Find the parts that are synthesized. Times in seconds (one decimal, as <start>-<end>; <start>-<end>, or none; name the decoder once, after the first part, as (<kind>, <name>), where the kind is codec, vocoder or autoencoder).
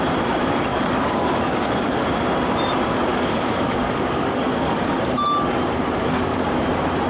0.7-2.1 (codec, DAC); 3.1-5.0; 6.0-6.5